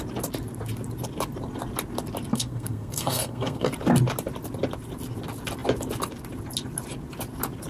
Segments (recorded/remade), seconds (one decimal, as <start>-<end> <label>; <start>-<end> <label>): 0.0-2.3 recorded; 2.3-3.7 remade; 3.7-7.7 recorded